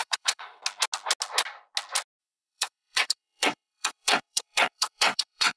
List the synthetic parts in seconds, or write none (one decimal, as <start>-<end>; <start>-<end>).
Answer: 0.0-0.6; 2.2-5.6